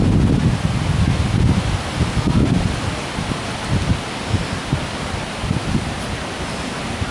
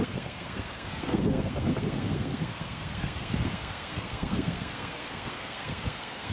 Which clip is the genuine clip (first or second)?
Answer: first